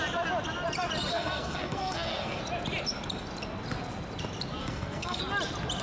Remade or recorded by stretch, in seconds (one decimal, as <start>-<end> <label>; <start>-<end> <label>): 0.0-1.1 recorded; 1.1-2.4 remade; 2.4-4.6 recorded; 4.6-5.2 remade; 5.2-5.8 recorded